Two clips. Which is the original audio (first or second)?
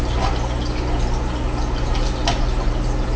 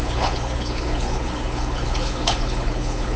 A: first